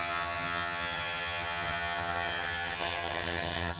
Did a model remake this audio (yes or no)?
yes